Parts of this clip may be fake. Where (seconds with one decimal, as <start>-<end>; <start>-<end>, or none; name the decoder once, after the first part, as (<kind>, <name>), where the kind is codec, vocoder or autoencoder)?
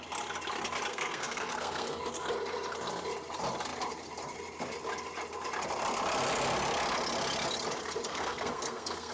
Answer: 0.9-2.0 (codec, SNAC); 8.1-9.1